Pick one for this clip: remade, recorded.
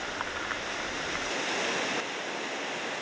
recorded